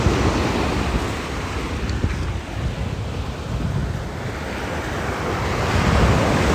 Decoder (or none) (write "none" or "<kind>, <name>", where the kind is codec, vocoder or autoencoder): none